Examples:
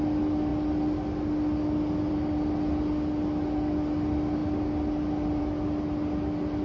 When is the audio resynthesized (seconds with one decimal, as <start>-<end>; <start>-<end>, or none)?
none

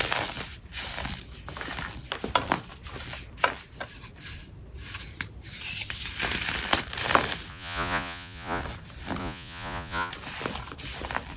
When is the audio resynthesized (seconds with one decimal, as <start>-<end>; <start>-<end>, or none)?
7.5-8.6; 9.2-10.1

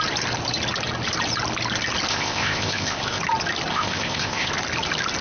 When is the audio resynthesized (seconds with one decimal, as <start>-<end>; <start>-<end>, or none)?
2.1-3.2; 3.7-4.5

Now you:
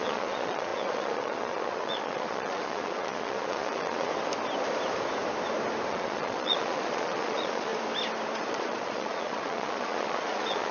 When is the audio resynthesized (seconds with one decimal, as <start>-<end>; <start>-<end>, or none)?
0.0-4.1; 5.9-7.7; 8.4-10.7